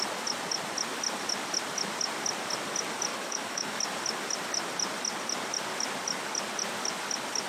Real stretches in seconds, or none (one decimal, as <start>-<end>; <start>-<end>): 0.0-3.1; 3.8-7.5